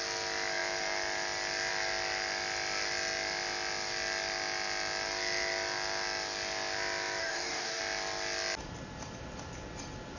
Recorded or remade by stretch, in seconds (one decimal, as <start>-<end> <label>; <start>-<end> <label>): 0.0-7.2 recorded; 7.2-7.8 remade; 7.8-10.2 recorded